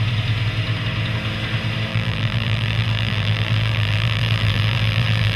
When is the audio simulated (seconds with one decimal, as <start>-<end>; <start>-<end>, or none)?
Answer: 1.9-5.4